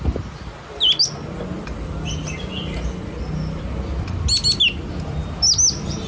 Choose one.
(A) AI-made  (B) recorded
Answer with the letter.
B